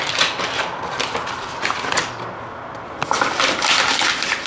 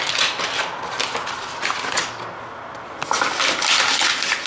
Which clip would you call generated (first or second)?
first